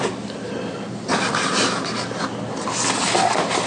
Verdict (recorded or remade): recorded